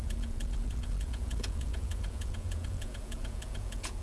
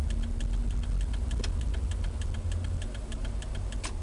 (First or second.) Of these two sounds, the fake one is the first